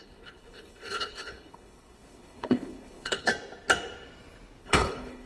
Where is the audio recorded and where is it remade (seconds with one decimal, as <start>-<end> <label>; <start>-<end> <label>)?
0.0-3.3 remade; 3.3-4.6 recorded; 4.6-5.3 remade